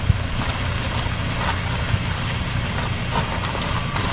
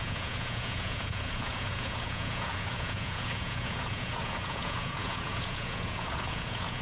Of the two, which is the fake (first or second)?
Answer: second